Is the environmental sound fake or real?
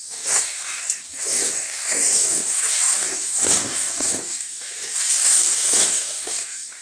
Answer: fake